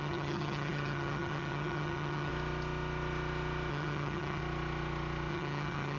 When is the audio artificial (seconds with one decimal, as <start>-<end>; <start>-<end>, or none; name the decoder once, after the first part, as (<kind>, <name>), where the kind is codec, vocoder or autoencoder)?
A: 0.0-2.3 (vocoder, HiFi-GAN); 3.7-4.4; 5.3-6.0